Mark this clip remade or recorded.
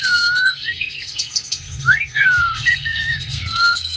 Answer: remade